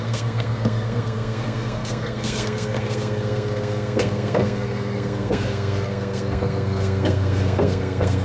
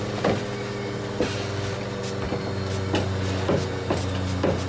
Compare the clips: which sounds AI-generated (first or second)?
first